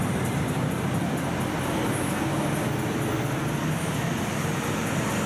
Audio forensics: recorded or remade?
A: recorded